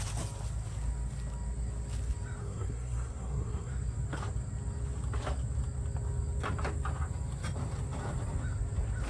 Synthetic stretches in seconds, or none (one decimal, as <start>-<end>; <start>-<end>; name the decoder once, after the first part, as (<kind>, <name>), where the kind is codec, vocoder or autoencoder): 2.4-3.7 (codec, SNAC)